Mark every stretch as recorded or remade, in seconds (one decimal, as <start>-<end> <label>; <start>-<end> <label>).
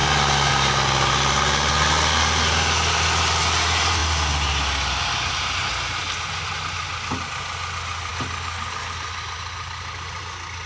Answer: 0.0-10.7 recorded